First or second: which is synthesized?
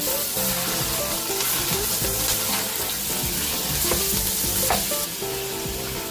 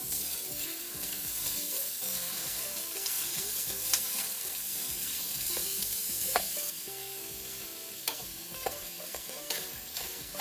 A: second